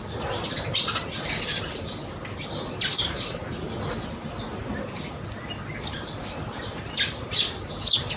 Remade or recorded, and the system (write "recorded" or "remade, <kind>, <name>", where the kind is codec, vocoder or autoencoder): recorded